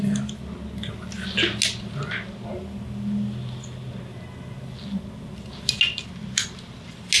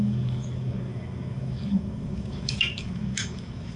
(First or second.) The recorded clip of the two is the first